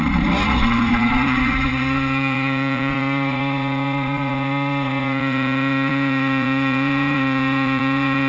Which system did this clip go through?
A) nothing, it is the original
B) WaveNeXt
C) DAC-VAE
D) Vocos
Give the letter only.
D